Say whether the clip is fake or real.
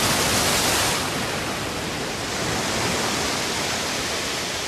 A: real